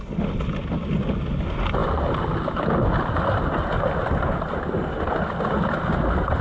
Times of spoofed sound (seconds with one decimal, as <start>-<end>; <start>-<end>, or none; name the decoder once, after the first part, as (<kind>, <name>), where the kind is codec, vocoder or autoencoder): none